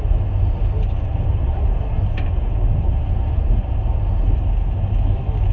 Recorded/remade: recorded